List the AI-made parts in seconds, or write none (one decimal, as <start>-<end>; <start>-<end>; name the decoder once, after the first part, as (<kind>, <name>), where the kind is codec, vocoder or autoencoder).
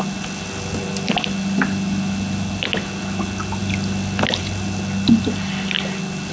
none